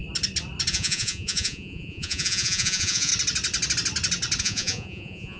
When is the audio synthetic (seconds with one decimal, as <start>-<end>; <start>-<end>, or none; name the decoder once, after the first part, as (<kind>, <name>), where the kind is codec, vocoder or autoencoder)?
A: 0.7-3.1 (vocoder, Vocos); 4.4-5.4

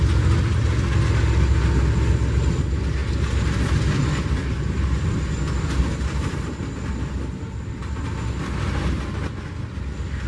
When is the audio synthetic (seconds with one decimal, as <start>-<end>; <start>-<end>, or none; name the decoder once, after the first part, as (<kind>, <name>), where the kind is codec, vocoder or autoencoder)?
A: none

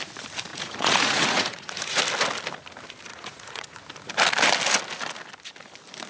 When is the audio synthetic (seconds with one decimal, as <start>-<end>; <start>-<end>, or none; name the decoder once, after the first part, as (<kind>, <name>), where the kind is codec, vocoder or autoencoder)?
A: 0.5-2.0 (vocoder, Vocos); 3.1-3.8

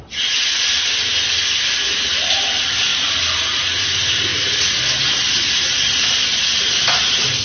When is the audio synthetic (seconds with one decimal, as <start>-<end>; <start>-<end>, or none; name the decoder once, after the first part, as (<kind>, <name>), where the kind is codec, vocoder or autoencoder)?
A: 2.9-3.9 (vocoder, Vocos); 4.3-4.8

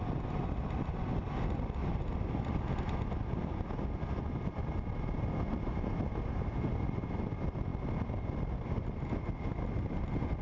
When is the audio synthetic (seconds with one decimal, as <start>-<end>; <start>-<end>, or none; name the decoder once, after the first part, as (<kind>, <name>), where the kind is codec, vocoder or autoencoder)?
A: none